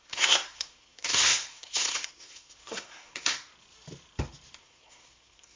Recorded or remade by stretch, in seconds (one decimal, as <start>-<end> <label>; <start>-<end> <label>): 0.0-3.5 remade; 3.5-4.6 recorded; 4.6-5.6 remade